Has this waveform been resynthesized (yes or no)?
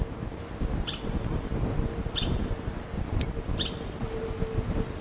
no